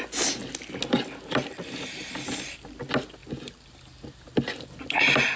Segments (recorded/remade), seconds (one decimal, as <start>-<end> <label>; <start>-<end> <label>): 0.0-5.4 recorded